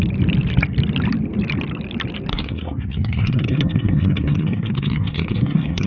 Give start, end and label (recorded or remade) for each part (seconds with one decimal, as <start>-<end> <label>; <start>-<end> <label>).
0.0-2.3 recorded; 2.3-5.9 remade